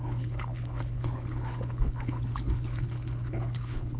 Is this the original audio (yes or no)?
no